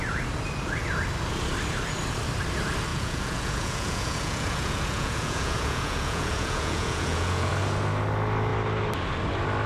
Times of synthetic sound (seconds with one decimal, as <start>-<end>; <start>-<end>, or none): 2.9-7.5